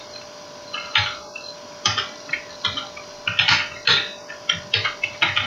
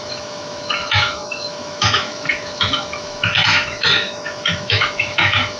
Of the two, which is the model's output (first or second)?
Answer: second